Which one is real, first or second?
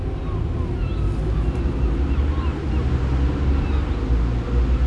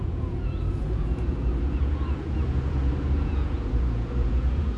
first